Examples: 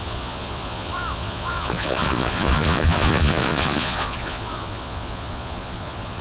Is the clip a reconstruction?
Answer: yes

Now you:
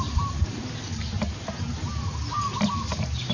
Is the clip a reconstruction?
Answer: no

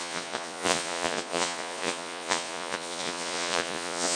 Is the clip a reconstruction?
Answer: yes